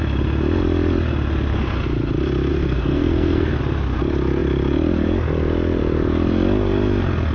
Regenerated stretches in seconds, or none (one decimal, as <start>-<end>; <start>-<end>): 2.5-3.6